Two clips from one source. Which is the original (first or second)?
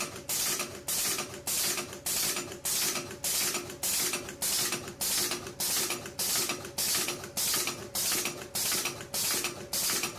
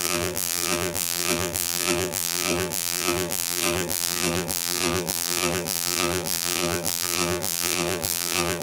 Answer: first